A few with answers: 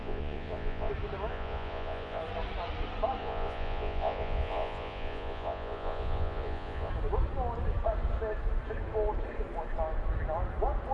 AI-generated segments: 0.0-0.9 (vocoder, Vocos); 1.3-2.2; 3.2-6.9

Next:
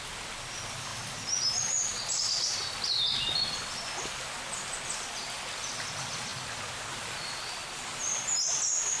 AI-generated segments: none

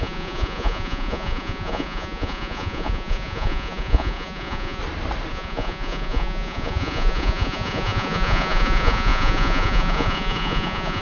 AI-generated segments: 0.0-4.8 (vocoder, Vocos); 5.3-11.0

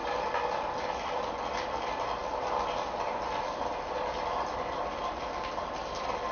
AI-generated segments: none

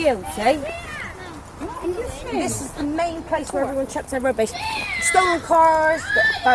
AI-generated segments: none

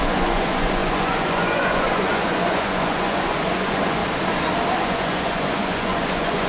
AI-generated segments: 0.0-4.0 (vocoder, Vocos); 4.8-6.5

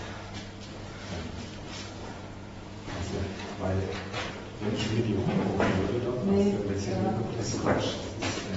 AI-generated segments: 2.0-4.3 (vocoder, Vocos); 5.3-5.9; 7.5-8.1

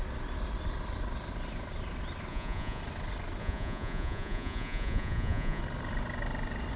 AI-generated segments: 2.3-2.8 (vocoder, Vocos); 3.4-5.6